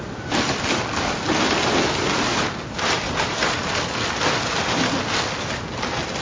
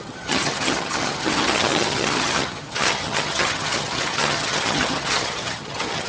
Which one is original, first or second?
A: first